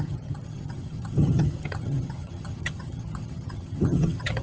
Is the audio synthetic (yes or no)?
yes